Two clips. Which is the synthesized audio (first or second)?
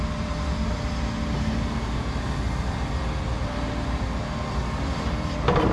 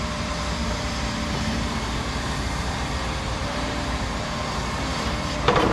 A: second